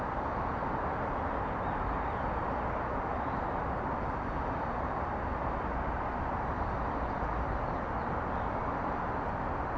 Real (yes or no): yes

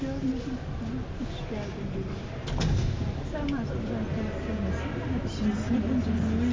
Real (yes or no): yes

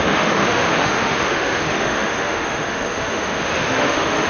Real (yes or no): no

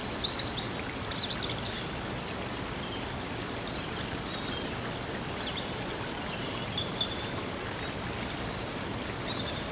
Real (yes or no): yes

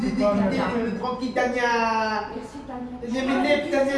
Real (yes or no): yes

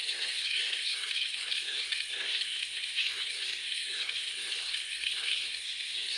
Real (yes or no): no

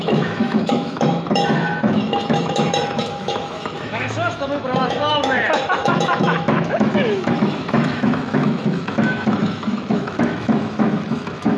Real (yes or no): no